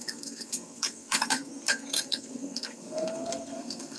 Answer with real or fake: fake